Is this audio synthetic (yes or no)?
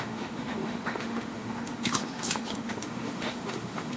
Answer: yes